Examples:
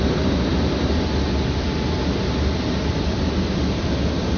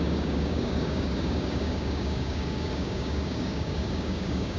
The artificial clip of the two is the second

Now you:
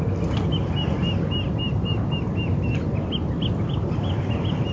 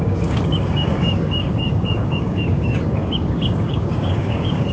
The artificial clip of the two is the second